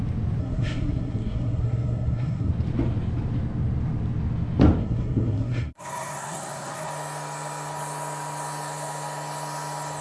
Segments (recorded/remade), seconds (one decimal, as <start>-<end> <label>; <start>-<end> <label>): 0.0-0.4 recorded; 0.4-2.5 remade; 2.5-4.8 recorded; 4.8-6.9 remade; 6.9-10.0 recorded